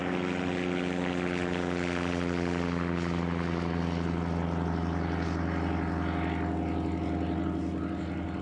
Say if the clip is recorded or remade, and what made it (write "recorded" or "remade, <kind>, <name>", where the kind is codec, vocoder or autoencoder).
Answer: recorded